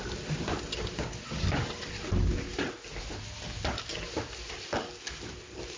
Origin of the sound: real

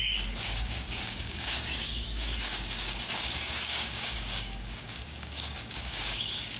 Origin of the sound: fake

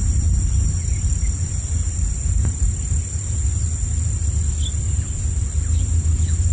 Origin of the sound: real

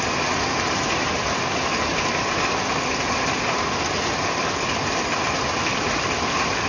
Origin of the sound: real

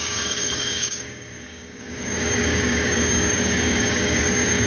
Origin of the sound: fake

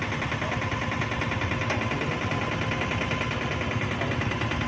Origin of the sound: real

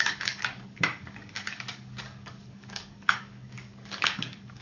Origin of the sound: fake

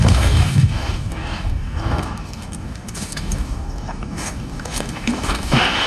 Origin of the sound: fake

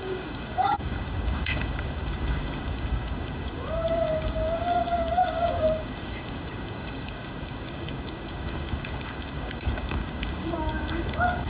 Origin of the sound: fake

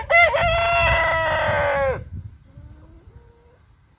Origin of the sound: real